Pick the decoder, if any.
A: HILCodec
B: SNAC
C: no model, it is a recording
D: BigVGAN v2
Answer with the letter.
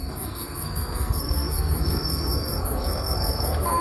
B